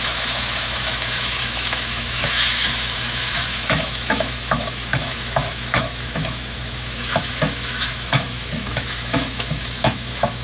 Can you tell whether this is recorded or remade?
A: remade